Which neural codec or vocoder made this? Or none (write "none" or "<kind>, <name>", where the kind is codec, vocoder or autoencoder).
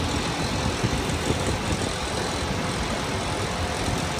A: none